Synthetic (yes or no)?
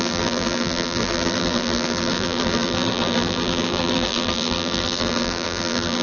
yes